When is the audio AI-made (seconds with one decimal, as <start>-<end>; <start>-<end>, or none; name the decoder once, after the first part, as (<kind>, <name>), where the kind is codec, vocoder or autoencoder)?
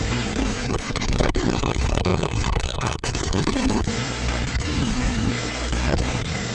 0.0-6.5 (codec, SNAC)